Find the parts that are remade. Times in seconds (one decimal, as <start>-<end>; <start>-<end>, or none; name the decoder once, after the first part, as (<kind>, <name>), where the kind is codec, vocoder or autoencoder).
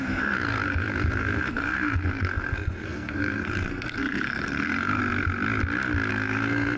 0.0-5.0 (codec, SNAC); 6.1-6.8